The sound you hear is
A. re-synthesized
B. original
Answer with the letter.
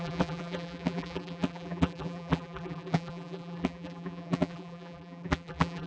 A